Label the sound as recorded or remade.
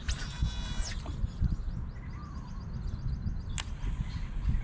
recorded